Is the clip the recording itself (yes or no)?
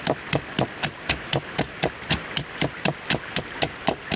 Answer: yes